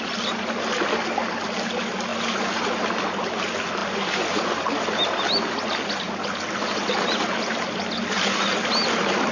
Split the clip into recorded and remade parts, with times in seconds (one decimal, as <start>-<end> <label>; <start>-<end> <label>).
0.0-9.3 recorded